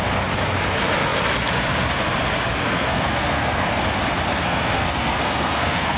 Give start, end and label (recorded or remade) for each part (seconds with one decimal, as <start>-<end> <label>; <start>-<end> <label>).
0.0-2.6 recorded; 2.6-3.8 remade; 3.8-4.3 recorded; 4.3-6.0 remade